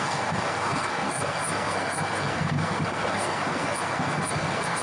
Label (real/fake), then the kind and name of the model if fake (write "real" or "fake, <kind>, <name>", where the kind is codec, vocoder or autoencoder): fake, codec, SNAC